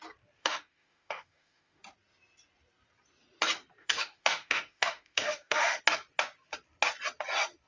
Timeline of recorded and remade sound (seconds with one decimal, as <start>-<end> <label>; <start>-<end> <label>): 0.0-0.4 recorded; 0.4-1.8 remade; 1.8-3.8 recorded; 3.8-5.8 remade; 5.8-7.7 recorded